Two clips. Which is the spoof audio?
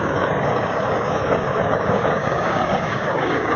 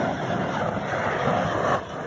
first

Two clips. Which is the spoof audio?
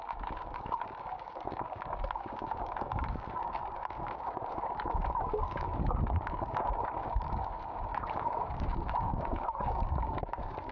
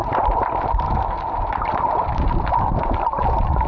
first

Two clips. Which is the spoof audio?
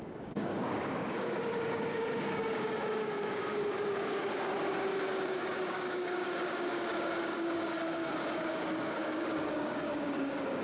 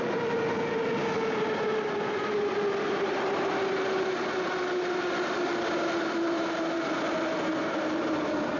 first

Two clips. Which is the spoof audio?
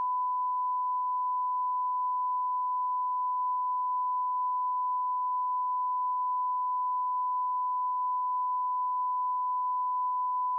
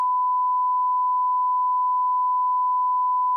first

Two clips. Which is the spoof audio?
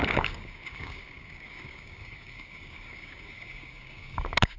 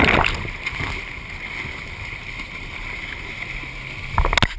first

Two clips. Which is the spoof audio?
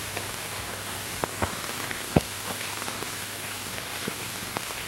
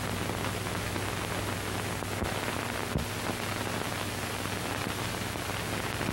first